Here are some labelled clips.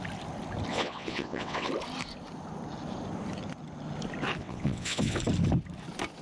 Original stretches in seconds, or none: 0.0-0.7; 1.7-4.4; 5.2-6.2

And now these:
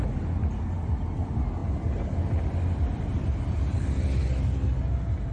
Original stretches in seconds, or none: 0.0-5.3